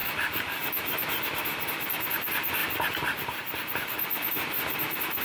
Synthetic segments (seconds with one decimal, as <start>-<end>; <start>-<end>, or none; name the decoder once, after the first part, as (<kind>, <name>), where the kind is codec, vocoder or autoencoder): 2.6-4.3 (vocoder, BigVGAN v2)